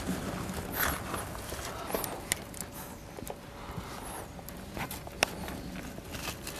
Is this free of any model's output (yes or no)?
yes